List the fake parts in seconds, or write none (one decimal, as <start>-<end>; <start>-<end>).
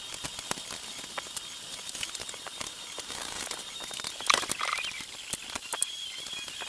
1.7-4.1